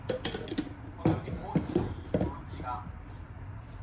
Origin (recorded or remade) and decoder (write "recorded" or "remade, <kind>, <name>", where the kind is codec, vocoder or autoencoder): recorded